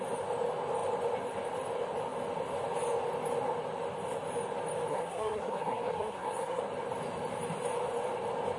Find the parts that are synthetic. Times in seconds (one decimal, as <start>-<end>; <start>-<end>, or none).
4.9-6.6